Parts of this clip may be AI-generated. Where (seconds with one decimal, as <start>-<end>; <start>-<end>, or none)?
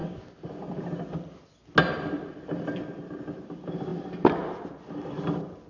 none